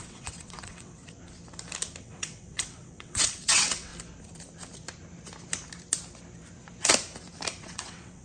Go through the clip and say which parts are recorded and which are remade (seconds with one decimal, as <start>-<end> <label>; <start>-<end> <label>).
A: 0.0-1.0 remade; 1.0-2.0 recorded; 2.0-3.9 remade; 3.9-7.6 recorded; 7.6-8.2 remade